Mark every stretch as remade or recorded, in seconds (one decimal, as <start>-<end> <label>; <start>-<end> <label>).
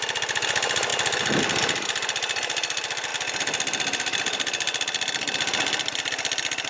0.0-6.7 recorded